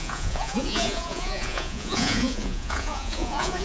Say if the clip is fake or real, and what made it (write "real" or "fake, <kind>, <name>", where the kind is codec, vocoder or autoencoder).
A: fake, vocoder, Vocos